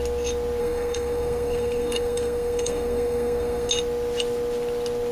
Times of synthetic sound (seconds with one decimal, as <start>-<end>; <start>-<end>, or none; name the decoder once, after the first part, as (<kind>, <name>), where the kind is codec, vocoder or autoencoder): 0.6-3.7 (codec, SNAC)

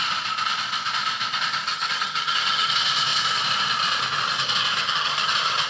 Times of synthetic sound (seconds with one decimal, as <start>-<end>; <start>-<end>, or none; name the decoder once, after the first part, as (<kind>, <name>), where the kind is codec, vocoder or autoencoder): 1.7-2.7 (vocoder, HiFi-GAN); 4.8-5.3

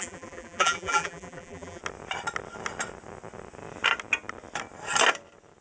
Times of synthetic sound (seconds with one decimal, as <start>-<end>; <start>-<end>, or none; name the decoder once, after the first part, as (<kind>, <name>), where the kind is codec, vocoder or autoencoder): 0.0-1.8 (vocoder, BigVGAN v2)

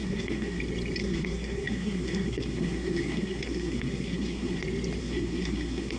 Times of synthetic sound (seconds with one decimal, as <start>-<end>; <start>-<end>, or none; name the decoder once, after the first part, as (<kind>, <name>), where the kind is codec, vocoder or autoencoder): 0.0-0.6 (codec, SNAC); 1.0-4.6; 5.0-6.0

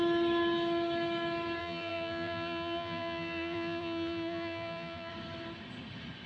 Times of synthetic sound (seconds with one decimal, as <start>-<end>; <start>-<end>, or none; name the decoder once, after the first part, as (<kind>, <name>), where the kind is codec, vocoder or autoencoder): 1.6-5.1 (vocoder, BigVGAN v2)

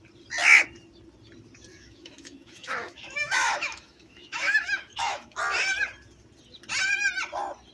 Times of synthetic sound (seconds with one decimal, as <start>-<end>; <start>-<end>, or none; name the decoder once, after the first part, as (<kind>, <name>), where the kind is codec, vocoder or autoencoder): 1.7-5.4 (autoencoder, DAC-VAE)

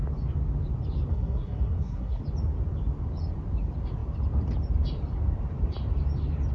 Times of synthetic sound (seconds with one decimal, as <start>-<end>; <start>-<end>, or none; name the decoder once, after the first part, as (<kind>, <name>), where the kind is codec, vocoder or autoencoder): 1.1-2.2 (codec, SNAC)